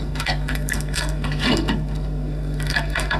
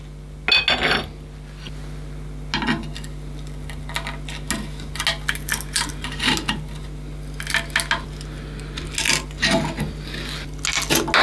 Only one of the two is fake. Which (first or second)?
first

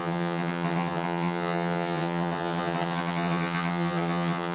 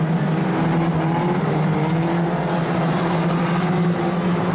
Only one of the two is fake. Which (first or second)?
first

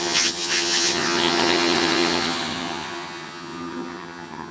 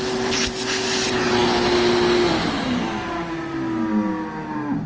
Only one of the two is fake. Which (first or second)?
first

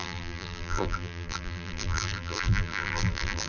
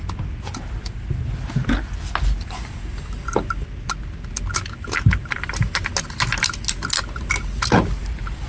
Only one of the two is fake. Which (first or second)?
first